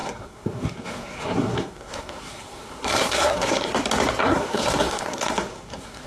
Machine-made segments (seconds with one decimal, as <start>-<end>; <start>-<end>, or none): 0.0-3.7; 4.2-6.1